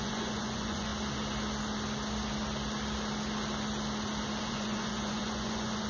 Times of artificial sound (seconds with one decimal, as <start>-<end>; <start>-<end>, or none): 0.0-0.9; 4.4-5.9